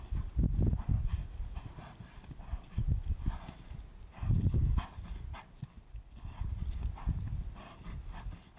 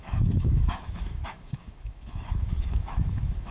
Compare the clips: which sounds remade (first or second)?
second